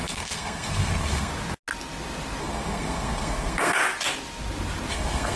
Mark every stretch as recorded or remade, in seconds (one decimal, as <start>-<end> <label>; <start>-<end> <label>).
0.0-1.3 remade; 1.3-2.4 recorded; 2.4-3.8 remade; 3.8-4.9 recorded; 4.9-5.4 remade